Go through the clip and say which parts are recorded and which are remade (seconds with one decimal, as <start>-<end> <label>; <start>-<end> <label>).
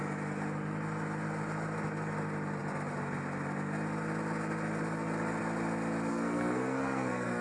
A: 0.0-6.1 recorded; 6.1-7.4 remade